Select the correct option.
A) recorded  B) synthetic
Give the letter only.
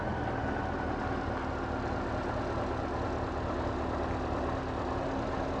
A